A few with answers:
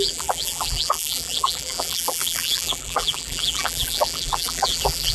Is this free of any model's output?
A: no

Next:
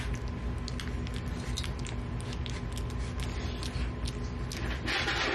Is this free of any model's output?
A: yes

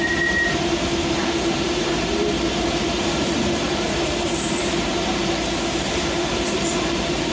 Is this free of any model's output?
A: no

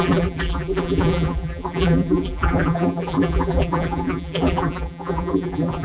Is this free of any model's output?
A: no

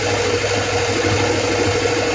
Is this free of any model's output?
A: yes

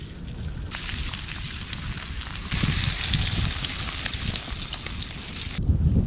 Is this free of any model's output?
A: yes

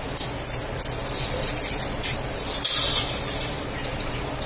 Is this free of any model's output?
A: no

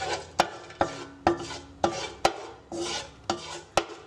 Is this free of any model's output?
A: yes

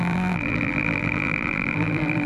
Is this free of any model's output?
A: no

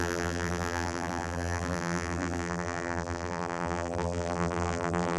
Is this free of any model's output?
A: no